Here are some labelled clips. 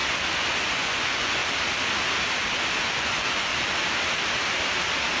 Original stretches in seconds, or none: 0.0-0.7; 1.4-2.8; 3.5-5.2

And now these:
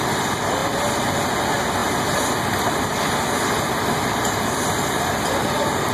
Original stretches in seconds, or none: 0.0-1.8; 5.3-5.9

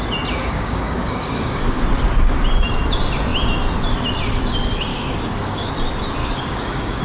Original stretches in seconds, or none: 0.0-0.4; 1.8-4.9; 5.7-6.2

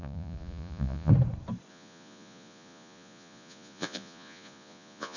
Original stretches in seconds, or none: 1.1-1.7

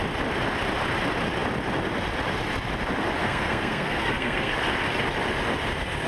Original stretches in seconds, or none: 0.0-3.2; 4.5-6.1

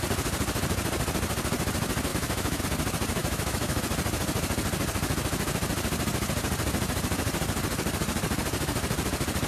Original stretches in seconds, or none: 0.0-2.1; 2.6-3.2; 3.8-9.5